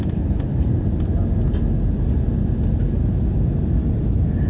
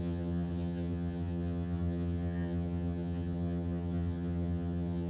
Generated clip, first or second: second